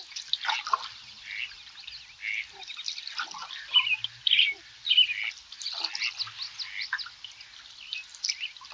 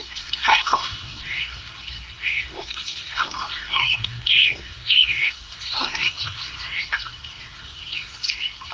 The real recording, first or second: first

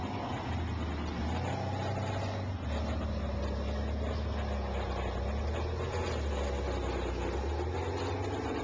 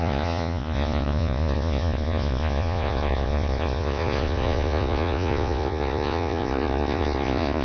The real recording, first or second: first